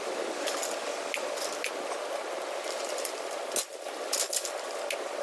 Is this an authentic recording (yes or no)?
yes